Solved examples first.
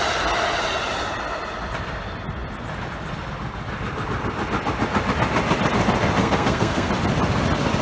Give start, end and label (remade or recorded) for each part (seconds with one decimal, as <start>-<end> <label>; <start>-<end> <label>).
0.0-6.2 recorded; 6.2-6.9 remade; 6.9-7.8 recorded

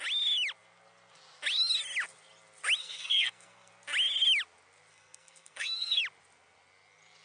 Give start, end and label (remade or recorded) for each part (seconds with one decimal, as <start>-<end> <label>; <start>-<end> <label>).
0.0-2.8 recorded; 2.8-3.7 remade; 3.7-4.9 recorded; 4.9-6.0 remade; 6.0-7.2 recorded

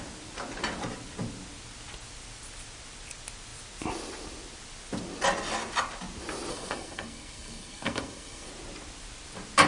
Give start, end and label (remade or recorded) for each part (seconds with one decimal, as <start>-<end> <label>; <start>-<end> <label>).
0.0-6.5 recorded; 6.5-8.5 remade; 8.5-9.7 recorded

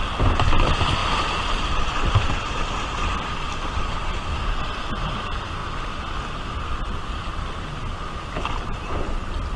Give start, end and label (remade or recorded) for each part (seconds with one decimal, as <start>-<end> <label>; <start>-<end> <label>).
0.0-9.6 recorded